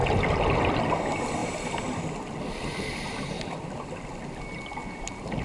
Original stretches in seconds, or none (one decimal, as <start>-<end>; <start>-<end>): 0.0-5.4